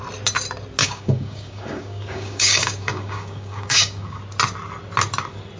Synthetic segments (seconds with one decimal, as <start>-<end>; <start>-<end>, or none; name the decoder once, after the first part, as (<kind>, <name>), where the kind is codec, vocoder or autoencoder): 0.8-4.2 (codec, DAC)